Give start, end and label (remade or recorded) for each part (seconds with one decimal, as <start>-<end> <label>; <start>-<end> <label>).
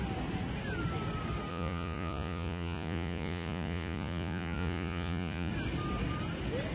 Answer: 0.0-1.5 recorded; 1.5-5.5 remade; 5.5-6.7 recorded